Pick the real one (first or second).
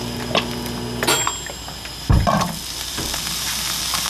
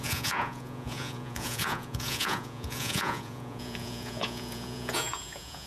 first